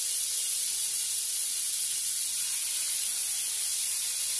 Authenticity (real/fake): real